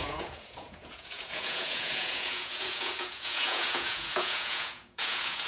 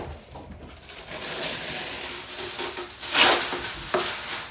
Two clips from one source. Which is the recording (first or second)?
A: second